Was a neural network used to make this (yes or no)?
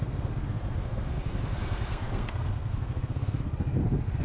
yes